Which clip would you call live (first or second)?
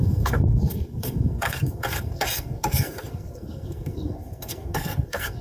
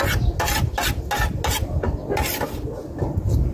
second